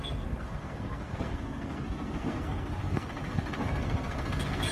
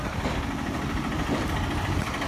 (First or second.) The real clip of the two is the second